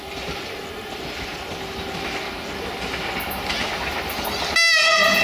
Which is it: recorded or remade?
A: recorded